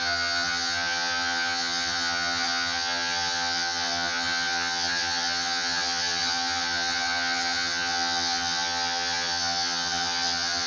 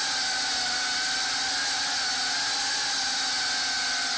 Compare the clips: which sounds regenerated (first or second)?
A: first